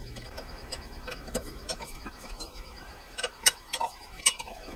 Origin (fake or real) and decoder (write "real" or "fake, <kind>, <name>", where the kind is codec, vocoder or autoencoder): fake, autoencoder, DAC-VAE